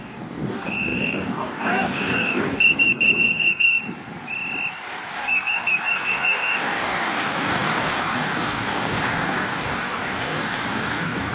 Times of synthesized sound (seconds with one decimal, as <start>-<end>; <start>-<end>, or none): 0.0-3.8; 5.1-11.3